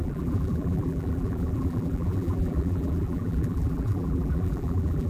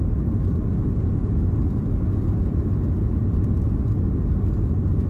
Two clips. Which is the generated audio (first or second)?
first